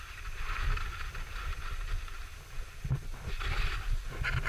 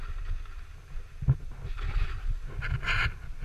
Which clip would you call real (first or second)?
second